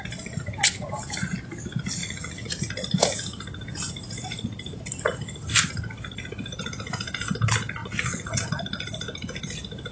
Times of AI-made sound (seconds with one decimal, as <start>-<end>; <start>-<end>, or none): 2.0-2.6; 7.8-8.5